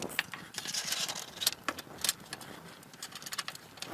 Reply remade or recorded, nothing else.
recorded